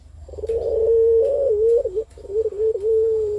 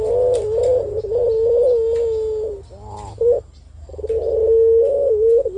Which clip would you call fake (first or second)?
first